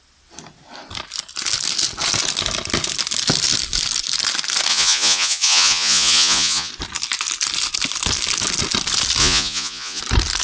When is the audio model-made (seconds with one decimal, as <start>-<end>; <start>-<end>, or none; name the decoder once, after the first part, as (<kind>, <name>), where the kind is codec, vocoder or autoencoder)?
4.7-6.7 (vocoder, Vocos); 9.2-10.0